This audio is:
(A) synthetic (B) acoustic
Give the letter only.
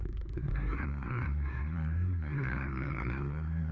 A